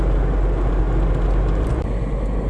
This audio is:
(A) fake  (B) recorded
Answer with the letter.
B